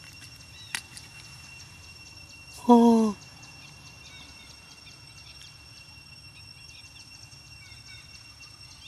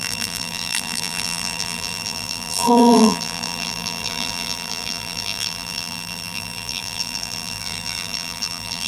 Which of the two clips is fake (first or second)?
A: second